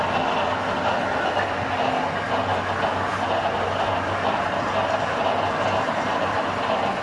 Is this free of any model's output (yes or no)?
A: yes